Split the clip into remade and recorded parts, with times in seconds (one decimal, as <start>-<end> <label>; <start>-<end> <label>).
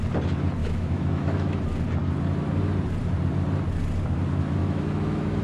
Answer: 0.0-0.6 recorded; 0.6-1.6 remade; 1.6-4.6 recorded; 4.6-5.4 remade